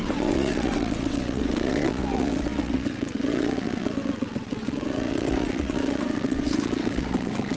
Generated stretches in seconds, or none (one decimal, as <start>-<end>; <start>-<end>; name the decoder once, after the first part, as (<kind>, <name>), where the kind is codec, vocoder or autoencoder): 0.0-7.6 (vocoder, WaveNeXt)